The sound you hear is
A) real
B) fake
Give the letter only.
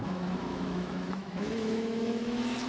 B